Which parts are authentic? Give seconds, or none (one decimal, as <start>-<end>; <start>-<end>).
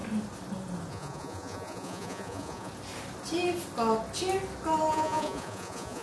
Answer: 0.0-0.9; 2.7-4.9